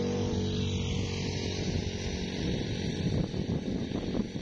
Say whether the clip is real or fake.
real